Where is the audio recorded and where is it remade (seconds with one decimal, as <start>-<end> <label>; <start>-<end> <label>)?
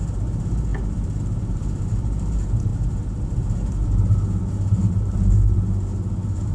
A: 0.0-6.5 remade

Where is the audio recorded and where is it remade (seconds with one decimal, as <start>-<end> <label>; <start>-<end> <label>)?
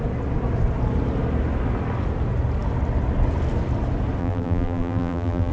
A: 0.0-4.2 recorded; 4.2-5.5 remade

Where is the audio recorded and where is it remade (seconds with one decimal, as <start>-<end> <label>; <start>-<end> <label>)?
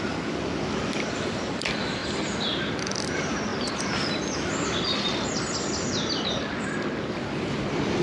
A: 0.0-3.5 remade; 3.5-4.0 recorded; 4.0-8.0 remade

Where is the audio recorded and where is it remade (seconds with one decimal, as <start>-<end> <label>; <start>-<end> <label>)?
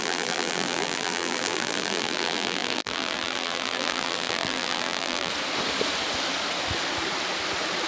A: 0.0-5.3 remade; 5.3-7.9 recorded